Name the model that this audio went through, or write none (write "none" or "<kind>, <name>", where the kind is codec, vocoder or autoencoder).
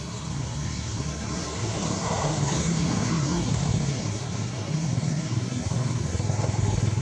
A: codec, SNAC